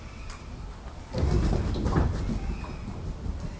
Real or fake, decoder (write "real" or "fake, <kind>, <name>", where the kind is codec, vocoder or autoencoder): real